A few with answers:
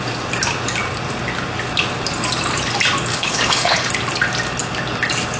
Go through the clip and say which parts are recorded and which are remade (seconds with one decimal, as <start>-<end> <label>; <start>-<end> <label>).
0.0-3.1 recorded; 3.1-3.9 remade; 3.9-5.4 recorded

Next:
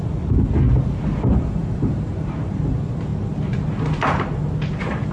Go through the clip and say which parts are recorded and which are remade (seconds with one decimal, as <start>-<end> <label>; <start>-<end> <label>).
0.0-1.3 recorded; 1.3-2.5 remade; 2.5-5.1 recorded

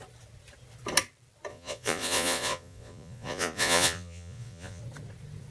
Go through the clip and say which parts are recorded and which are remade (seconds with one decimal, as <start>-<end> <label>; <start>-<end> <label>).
0.0-1.5 recorded; 1.5-4.8 remade; 4.8-5.5 recorded

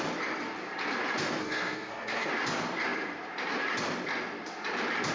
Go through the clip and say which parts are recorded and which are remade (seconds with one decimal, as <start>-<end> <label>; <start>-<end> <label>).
0.0-1.4 recorded; 1.4-2.3 remade; 2.3-5.1 recorded